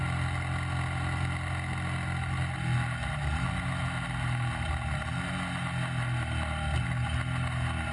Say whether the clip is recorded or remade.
recorded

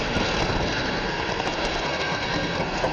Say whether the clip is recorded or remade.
remade